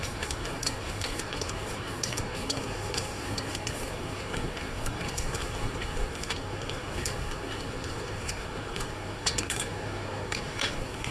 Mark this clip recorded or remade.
remade